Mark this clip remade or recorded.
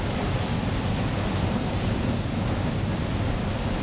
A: recorded